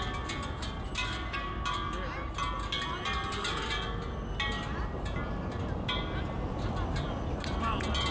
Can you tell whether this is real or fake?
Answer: real